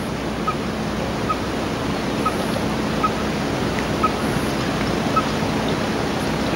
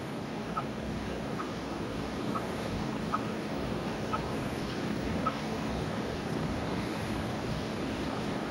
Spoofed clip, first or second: second